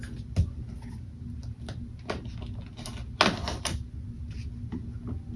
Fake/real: real